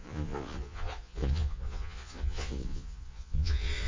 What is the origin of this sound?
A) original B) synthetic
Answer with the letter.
B